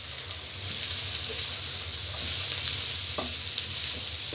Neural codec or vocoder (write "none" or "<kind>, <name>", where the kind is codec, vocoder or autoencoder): none